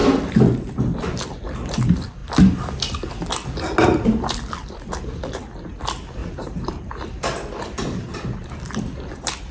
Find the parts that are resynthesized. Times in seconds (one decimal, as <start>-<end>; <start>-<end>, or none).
6.2-6.9